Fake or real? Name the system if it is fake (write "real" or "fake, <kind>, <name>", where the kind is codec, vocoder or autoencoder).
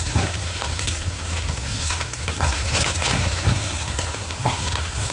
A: fake, codec, SNAC